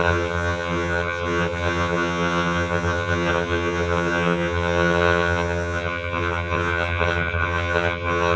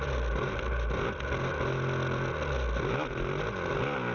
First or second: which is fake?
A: first